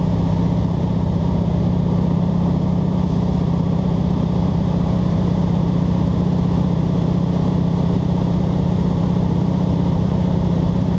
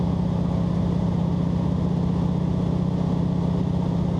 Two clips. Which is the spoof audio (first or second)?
first